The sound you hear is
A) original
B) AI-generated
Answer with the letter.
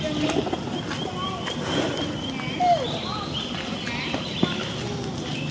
A